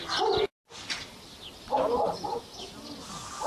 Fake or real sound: real